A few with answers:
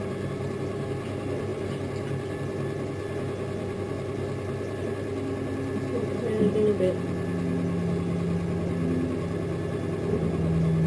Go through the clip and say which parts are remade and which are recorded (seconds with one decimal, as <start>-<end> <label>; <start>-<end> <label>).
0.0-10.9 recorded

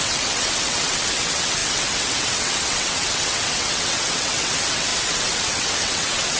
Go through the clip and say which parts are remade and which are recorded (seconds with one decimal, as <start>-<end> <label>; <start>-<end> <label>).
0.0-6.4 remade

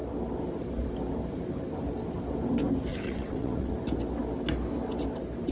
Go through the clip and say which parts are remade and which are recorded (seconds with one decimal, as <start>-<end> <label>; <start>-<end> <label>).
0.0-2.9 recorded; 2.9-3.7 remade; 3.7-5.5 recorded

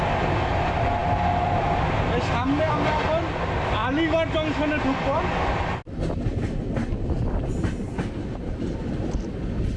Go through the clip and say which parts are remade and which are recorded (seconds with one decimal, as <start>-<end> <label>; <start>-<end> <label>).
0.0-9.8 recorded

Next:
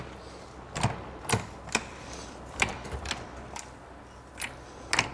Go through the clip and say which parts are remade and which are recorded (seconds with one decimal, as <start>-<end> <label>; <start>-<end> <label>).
0.0-5.1 recorded